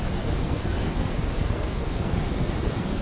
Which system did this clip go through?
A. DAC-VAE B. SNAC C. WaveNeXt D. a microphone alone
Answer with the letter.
B